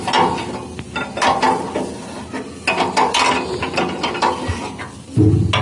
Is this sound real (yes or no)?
yes